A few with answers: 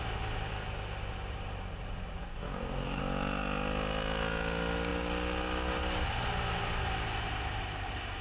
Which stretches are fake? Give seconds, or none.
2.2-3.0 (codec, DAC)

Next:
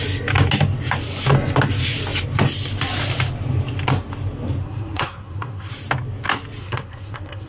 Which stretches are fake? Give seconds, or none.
4.6-5.7 (codec, SNAC); 6.6-7.5

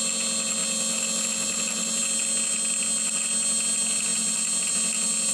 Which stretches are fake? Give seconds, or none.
none

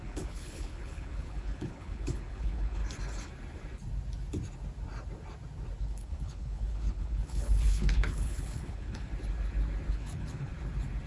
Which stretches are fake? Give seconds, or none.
0.0-2.8 (codec, HILCodec); 5.8-9.1; 9.9-10.5

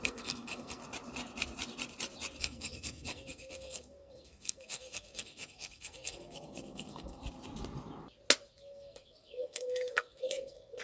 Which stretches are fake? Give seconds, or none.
0.0-0.8 (codec, SNAC); 2.4-7.2; 8.5-10.8